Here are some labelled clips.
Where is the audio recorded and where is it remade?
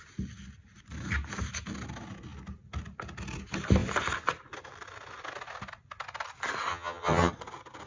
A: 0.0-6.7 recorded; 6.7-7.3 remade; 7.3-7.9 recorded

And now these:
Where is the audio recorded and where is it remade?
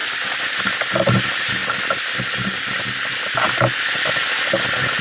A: 0.0-5.0 recorded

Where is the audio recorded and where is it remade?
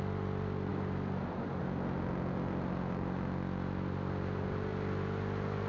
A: 0.0-5.7 recorded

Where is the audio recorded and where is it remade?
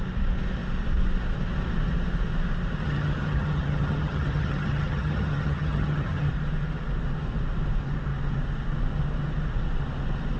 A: 0.0-2.8 recorded; 2.8-6.3 remade; 6.3-10.4 recorded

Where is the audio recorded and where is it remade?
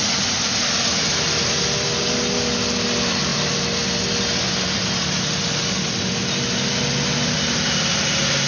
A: 0.0-8.5 recorded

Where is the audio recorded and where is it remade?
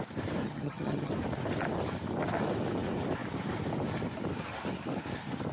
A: 0.0-0.4 recorded; 0.4-1.1 remade; 1.1-5.5 recorded